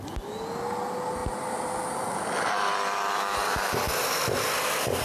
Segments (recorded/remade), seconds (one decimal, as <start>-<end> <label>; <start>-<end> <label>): 0.0-1.2 recorded; 1.2-4.2 remade; 4.2-5.0 recorded